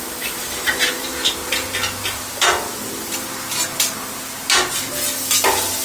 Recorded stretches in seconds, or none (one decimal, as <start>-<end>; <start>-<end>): 0.0-5.8